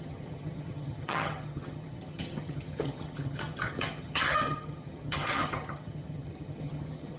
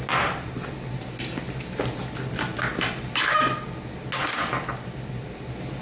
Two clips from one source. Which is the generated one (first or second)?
first